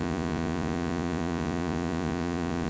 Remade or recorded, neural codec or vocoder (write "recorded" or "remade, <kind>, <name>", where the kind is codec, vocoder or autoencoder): remade, vocoder, Vocos